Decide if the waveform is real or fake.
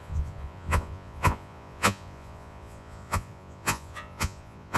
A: fake